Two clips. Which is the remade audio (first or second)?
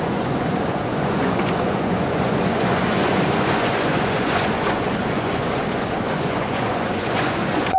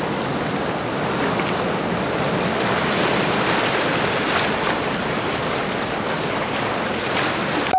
first